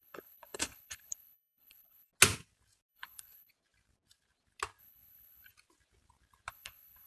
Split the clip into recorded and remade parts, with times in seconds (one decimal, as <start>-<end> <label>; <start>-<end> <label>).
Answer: 0.0-2.1 remade; 2.1-2.9 recorded; 2.9-3.5 remade; 3.5-4.8 recorded; 4.8-5.5 remade; 5.5-6.5 recorded; 6.5-7.1 remade